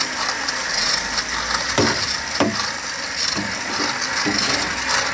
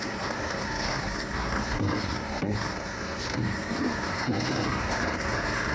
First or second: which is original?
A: first